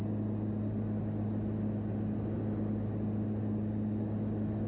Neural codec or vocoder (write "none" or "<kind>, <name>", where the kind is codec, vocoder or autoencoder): none